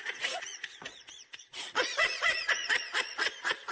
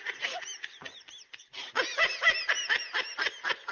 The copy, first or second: first